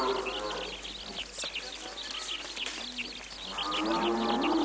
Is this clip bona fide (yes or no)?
yes